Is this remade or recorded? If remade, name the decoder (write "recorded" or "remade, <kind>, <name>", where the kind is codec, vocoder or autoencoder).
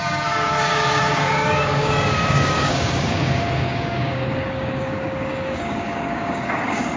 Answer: remade, codec, DAC